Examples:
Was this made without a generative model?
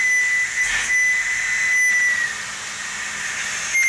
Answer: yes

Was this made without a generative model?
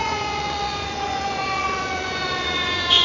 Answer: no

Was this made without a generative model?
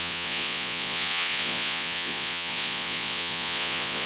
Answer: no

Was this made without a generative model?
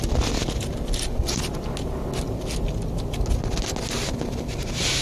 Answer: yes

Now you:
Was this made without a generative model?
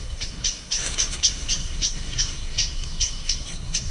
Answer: no